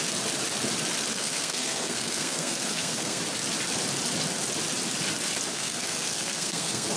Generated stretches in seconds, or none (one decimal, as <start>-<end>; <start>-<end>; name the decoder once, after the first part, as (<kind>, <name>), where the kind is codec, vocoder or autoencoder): 1.1-3.2 (codec, SNAC); 5.5-7.0